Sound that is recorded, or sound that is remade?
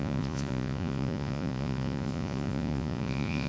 remade